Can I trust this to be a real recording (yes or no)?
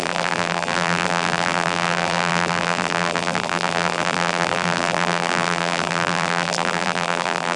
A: no